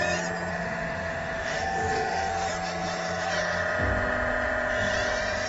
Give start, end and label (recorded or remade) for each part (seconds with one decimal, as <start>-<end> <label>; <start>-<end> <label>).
0.0-0.5 recorded; 0.5-2.3 remade; 2.3-5.5 recorded